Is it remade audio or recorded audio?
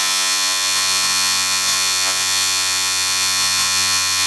remade